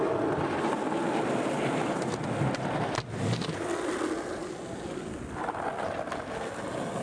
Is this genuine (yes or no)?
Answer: yes